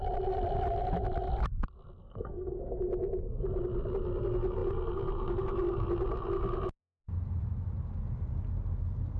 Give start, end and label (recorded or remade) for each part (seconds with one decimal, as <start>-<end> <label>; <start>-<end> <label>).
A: 0.0-2.0 recorded; 2.0-2.6 remade; 2.6-9.2 recorded